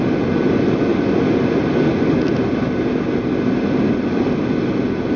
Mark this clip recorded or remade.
recorded